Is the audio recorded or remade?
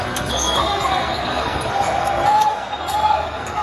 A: remade